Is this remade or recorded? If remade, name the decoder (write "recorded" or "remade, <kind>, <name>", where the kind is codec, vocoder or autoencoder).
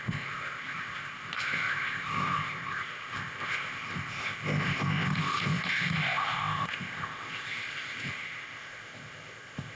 remade, codec, ZipCodec